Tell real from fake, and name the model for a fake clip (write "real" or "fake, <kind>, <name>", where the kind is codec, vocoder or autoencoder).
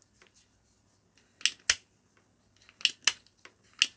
real